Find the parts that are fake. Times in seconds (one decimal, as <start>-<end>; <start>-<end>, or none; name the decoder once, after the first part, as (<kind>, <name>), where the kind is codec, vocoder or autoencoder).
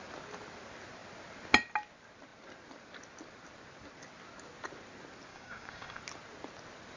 5.3-6.0 (codec, DAC)